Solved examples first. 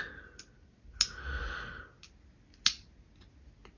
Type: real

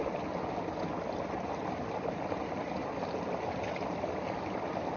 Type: real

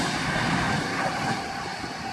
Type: real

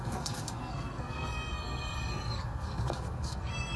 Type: fake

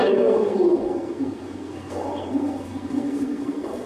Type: fake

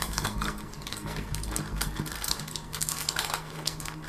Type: fake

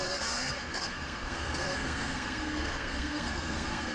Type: fake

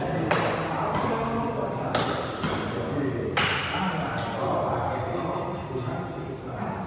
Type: real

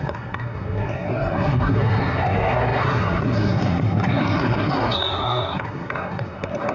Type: fake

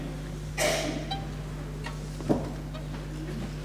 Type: real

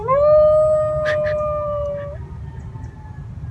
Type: real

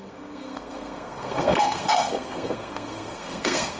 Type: fake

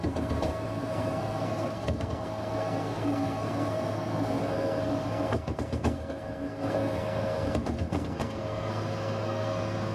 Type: fake